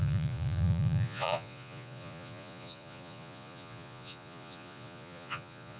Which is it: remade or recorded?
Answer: remade